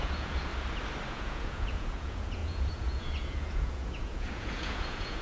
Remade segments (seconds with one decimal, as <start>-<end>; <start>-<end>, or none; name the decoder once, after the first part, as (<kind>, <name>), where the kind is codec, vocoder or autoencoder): 0.0-0.5 (vocoder, Vocos); 1.1-5.2